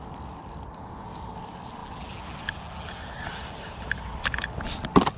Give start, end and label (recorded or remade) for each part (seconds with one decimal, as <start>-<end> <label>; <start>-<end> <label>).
0.0-5.2 recorded